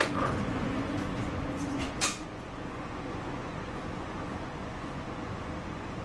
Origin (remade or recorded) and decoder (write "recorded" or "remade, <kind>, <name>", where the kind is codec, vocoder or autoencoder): remade, vocoder, Vocos